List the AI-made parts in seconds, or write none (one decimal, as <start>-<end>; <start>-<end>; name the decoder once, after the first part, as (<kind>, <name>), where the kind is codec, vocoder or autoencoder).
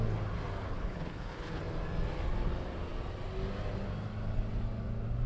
0.6-1.6 (codec, HILCodec)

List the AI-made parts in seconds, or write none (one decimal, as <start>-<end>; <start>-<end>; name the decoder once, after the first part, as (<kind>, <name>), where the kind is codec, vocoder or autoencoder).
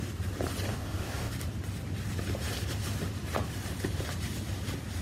0.7-1.3 (codec, DAC)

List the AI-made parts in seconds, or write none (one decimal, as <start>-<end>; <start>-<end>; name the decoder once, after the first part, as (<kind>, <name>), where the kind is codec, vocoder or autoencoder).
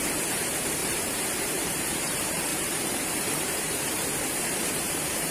0.0-5.3 (vocoder, BigVGAN v2)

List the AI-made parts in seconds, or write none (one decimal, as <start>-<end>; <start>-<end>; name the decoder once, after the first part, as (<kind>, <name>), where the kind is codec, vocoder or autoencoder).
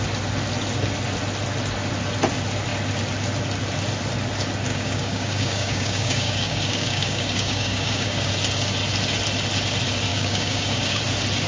4.7-8.3 (codec, DAC); 10.1-11.0